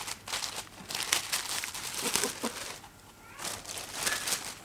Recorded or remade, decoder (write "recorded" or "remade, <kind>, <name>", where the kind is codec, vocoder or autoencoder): recorded